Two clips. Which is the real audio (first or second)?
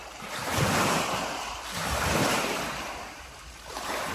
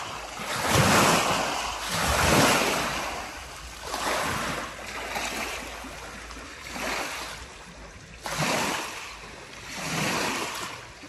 second